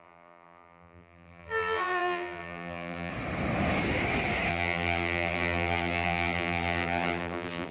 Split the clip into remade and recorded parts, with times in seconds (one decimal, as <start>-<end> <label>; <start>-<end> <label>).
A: 0.0-3.1 remade; 3.1-4.5 recorded; 4.5-7.7 remade